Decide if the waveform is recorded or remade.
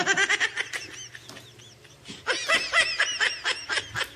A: recorded